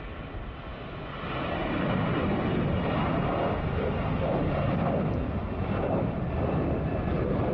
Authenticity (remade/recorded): recorded